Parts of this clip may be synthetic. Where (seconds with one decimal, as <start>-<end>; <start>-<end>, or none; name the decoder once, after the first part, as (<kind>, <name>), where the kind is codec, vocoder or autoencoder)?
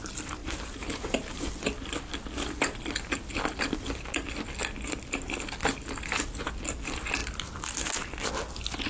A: 0.4-1.4 (vocoder, BigVGAN v2)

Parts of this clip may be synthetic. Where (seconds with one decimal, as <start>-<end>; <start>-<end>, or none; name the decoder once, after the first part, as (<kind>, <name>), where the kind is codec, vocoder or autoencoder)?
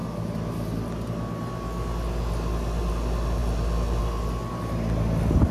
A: none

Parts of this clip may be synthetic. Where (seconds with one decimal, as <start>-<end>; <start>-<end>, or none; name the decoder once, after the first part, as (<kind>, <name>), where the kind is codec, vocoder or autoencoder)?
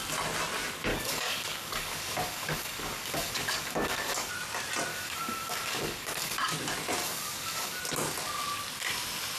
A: 0.9-4.3 (codec, DAC); 4.9-6.5; 7.0-7.8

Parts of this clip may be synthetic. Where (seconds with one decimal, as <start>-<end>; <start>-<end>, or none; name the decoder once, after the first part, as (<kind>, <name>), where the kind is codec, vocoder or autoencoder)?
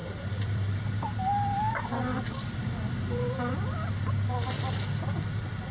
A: 0.0-0.8 (vocoder, BigVGAN v2)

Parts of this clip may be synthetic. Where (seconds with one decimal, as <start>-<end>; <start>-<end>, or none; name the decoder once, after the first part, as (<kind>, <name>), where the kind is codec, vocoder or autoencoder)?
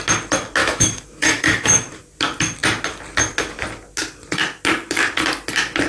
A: 0.6-2.0 (autoencoder, DAC-VAE)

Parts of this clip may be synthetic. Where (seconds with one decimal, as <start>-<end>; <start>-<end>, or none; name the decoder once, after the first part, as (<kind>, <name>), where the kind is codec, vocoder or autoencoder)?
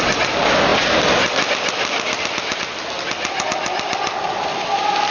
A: none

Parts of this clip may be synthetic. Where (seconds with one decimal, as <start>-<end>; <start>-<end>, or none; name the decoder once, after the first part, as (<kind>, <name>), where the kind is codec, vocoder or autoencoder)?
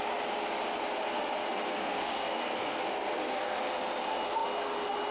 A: 1.5-3.6 (codec, SNAC)